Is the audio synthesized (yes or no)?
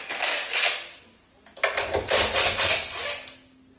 no